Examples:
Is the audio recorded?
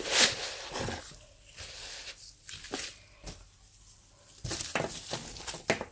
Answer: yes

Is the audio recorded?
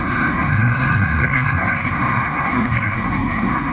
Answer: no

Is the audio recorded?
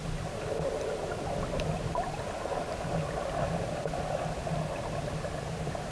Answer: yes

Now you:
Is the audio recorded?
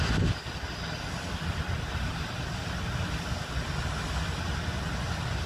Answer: yes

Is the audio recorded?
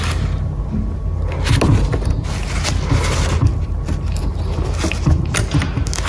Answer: yes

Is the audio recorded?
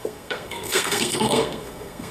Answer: no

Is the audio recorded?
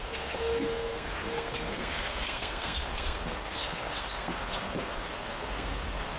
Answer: no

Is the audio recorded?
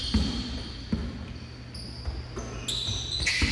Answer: yes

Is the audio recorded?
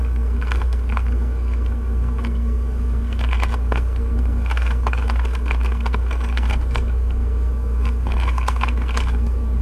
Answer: no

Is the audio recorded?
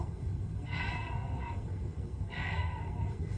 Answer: no